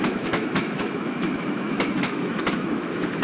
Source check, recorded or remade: remade